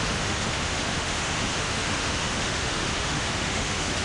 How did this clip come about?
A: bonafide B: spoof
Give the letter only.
B